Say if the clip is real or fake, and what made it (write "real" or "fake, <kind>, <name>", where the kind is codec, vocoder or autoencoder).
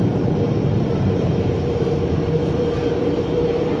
fake, vocoder, BigVGAN v2